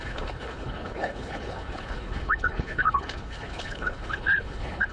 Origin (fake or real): fake